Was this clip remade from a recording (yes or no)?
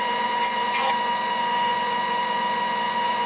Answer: yes